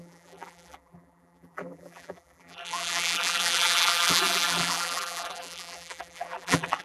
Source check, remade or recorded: remade